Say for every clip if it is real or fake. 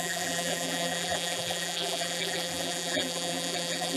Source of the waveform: fake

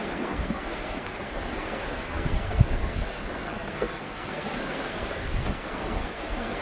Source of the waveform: fake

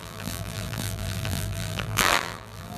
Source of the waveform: fake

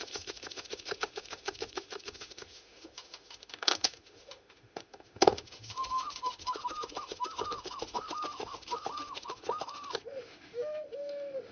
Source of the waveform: fake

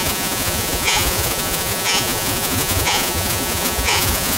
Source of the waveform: fake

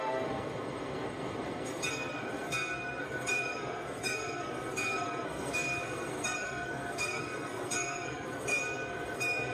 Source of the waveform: fake